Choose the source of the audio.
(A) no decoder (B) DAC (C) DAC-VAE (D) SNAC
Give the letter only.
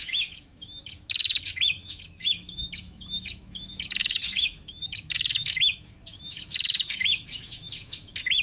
C